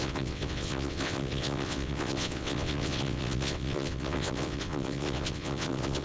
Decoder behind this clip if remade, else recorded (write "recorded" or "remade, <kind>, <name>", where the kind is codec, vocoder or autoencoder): remade, vocoder, WaveNeXt